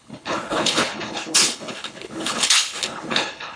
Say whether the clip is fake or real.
fake